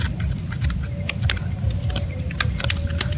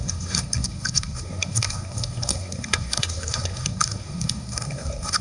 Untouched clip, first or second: first